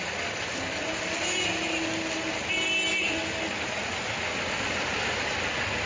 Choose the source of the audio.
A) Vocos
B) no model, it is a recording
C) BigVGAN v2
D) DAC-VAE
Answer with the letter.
B